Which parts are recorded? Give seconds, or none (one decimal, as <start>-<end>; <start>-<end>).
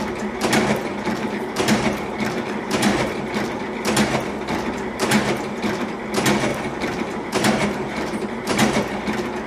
0.0-0.9; 3.2-6.5; 9.0-9.5